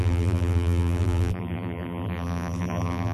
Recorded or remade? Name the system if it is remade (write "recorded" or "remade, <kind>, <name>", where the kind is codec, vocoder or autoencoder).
remade, vocoder, BigVGAN v2